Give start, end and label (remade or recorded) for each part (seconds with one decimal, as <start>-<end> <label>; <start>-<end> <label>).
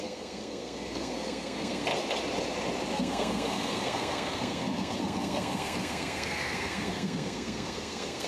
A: 0.0-1.9 remade; 1.9-2.9 recorded; 2.9-8.3 remade